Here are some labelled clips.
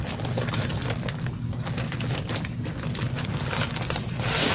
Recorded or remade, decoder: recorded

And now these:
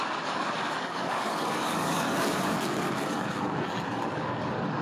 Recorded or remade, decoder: remade, codec, DAC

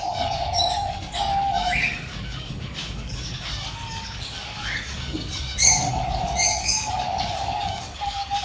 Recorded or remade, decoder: remade, codec, DAC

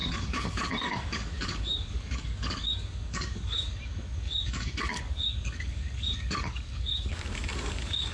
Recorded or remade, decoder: remade, codec, DAC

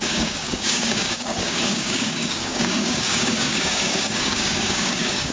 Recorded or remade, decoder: remade, codec, DAC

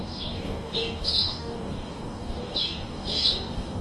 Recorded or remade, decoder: remade, codec, DAC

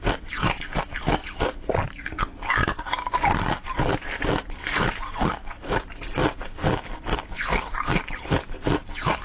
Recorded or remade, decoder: recorded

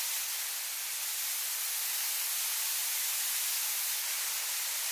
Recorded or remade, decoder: recorded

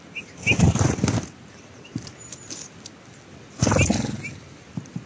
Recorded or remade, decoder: recorded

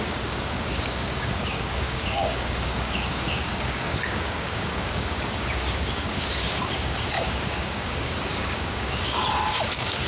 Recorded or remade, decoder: remade, codec, DAC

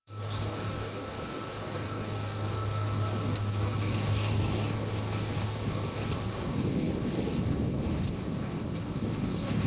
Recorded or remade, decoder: remade, codec, DAC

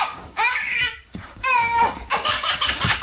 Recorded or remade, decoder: remade, codec, DAC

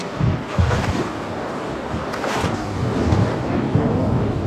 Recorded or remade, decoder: remade, codec, DAC